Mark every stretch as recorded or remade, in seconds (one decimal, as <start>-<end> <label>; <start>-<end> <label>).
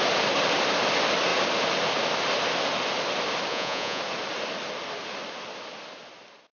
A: 0.0-3.5 recorded; 3.5-4.0 remade; 4.0-6.5 recorded